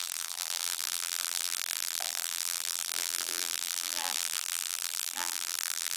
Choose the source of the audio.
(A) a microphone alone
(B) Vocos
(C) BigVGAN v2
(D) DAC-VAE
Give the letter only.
C